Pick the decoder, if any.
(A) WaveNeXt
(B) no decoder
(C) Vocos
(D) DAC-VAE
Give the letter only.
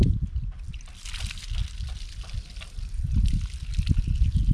B